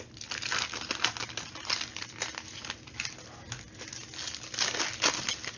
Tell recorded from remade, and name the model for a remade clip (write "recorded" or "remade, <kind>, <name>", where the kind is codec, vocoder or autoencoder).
recorded